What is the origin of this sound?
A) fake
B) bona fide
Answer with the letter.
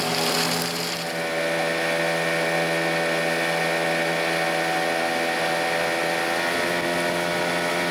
B